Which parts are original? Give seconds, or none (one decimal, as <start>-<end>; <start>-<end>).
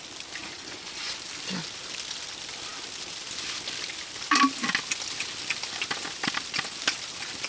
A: 0.0-0.4; 1.1-7.5